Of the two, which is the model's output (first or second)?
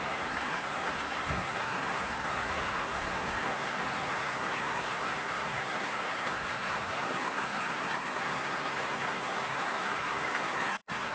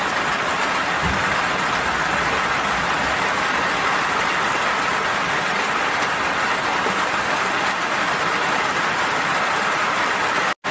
first